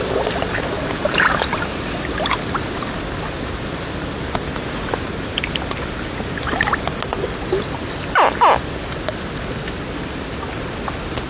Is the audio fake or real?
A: real